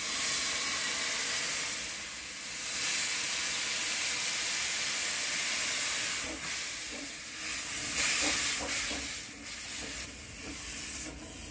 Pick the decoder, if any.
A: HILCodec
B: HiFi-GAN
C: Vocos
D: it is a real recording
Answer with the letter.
D